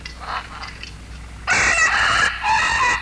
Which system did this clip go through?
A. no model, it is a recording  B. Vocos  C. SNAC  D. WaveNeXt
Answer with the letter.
A